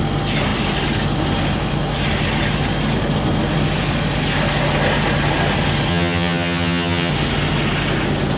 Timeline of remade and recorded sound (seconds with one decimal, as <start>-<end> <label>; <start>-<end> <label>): 0.0-5.9 recorded; 5.9-7.1 remade; 7.1-8.4 recorded